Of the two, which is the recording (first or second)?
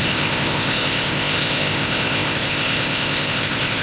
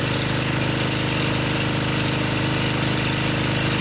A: second